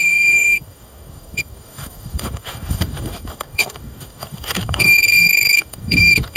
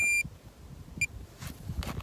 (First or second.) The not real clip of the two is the first